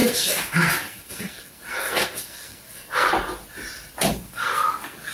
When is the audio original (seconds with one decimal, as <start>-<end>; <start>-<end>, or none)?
3.1-4.1